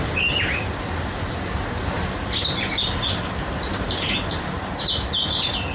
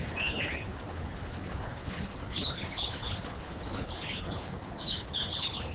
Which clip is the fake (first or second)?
second